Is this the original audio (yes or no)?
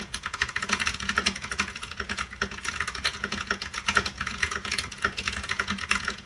no